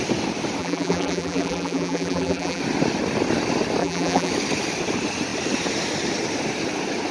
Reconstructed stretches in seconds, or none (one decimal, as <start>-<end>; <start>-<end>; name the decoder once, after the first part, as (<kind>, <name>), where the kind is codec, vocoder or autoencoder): 0.6-2.6 (vocoder, BigVGAN v2); 3.8-4.3